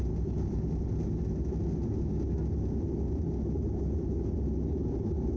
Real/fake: real